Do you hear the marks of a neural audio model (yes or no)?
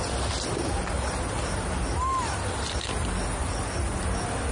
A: no